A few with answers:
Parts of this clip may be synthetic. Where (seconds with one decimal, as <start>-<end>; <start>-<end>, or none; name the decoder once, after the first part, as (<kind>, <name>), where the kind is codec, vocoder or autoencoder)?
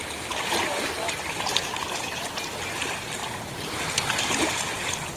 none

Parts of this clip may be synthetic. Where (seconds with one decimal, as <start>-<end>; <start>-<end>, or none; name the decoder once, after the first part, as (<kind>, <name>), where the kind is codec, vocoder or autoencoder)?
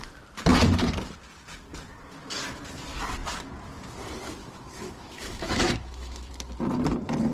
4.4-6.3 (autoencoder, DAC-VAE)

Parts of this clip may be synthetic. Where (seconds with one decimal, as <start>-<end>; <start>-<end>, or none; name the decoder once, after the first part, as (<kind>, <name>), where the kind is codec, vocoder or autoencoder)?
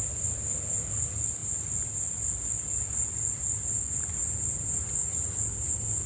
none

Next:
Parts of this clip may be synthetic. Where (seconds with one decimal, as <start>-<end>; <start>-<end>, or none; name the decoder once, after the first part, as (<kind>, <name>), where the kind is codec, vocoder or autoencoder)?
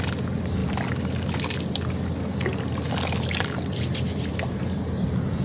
none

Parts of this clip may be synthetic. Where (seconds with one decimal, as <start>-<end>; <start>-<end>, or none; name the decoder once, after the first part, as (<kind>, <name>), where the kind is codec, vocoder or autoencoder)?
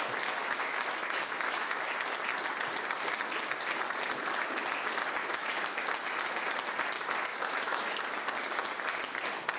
0.4-1.9 (autoencoder, DAC-VAE); 5.2-5.8; 7.3-8.0